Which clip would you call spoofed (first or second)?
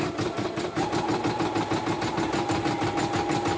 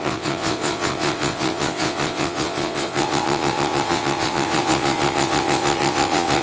second